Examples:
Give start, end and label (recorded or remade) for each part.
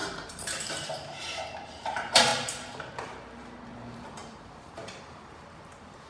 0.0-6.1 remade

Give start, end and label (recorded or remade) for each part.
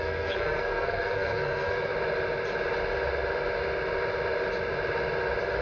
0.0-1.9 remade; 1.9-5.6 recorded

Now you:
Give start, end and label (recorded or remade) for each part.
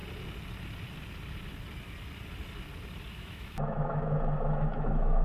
0.0-3.1 recorded; 3.1-5.2 remade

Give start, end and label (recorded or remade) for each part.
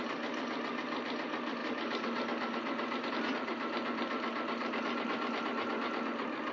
0.0-6.5 recorded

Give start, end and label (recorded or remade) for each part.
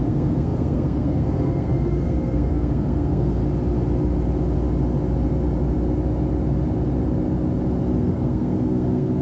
0.0-3.4 remade; 3.4-8.0 recorded; 8.0-9.2 remade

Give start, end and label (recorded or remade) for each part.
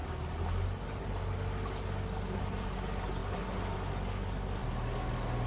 0.0-5.5 recorded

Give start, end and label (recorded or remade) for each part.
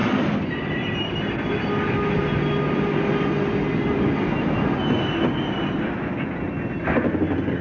0.0-7.6 recorded